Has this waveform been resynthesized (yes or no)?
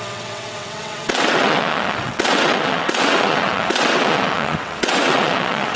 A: yes